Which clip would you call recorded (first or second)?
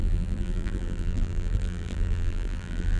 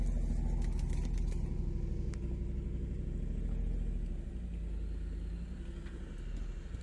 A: second